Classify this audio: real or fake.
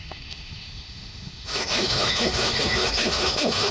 fake